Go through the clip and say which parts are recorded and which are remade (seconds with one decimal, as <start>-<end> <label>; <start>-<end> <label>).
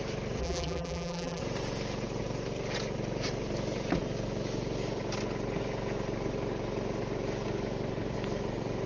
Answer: 0.0-0.4 recorded; 0.4-1.4 remade; 1.4-8.9 recorded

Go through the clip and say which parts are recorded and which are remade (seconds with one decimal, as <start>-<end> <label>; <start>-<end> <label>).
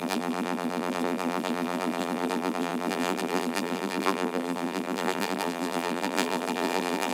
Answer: 0.0-7.1 remade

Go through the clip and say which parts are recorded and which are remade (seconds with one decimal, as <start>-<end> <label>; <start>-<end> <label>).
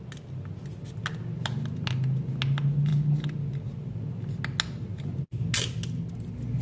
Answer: 0.0-6.6 recorded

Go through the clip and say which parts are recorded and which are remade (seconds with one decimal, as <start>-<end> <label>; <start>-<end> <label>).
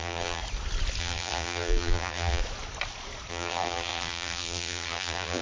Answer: 0.0-0.4 remade; 0.4-1.0 recorded; 1.0-2.4 remade; 2.4-3.3 recorded; 3.3-5.4 remade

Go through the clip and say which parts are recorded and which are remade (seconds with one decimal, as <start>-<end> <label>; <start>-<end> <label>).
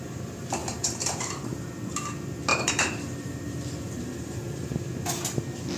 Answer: 0.0-0.6 recorded; 0.6-1.7 remade; 1.7-2.5 recorded; 2.5-4.7 remade; 4.7-5.8 recorded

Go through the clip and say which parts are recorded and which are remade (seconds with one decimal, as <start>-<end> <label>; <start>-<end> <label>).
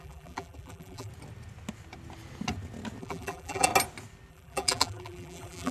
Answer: 0.0-1.1 remade; 1.1-3.0 recorded; 3.0-3.7 remade; 3.7-4.3 recorded; 4.3-5.7 remade